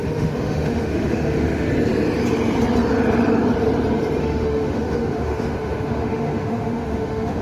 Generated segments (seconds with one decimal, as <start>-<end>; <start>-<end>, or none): 0.0-1.7; 4.2-7.4